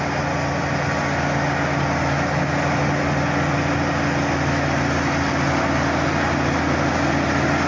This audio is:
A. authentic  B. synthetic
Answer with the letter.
A